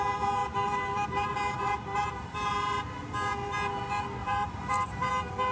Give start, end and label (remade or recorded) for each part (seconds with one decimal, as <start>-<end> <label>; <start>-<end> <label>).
0.0-0.4 recorded; 0.4-2.8 remade; 2.8-4.2 recorded; 4.2-5.1 remade; 5.1-5.5 recorded